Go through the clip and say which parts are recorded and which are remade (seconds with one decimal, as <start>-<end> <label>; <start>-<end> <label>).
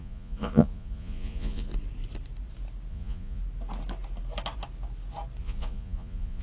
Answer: 0.0-1.7 remade; 1.7-2.9 recorded; 2.9-3.4 remade; 3.4-5.4 recorded; 5.4-6.4 remade